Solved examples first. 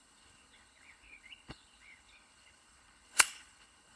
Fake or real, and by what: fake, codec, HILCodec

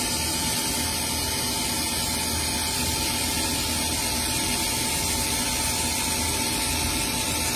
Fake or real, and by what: real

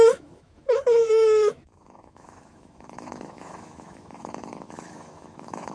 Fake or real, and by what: fake, autoencoder, DAC-VAE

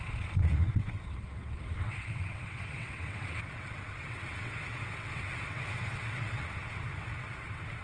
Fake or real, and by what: fake, vocoder, WaveNeXt